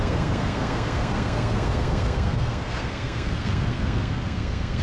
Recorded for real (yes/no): no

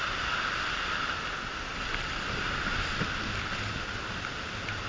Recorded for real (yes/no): yes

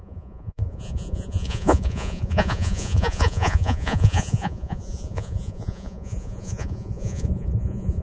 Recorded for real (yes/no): no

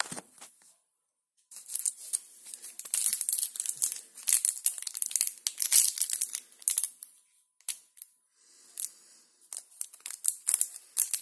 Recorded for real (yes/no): yes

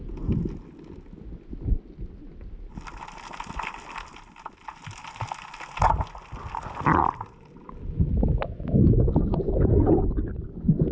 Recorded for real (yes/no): yes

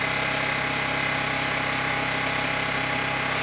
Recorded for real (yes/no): yes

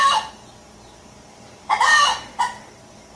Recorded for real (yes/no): no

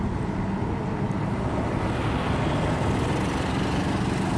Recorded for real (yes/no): yes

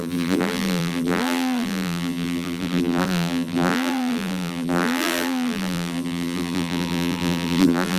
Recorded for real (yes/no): no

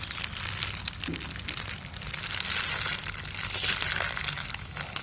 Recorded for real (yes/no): yes